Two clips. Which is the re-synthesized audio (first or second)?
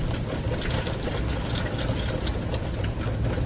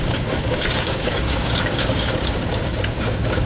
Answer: second